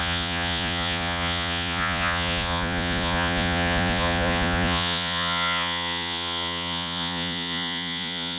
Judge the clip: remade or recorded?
remade